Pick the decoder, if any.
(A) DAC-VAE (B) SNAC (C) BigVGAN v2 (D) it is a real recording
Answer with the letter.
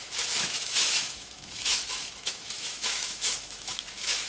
A